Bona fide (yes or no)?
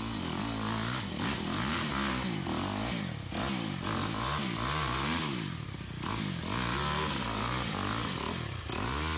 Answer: yes